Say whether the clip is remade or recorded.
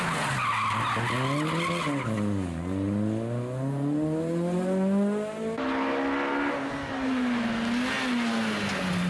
recorded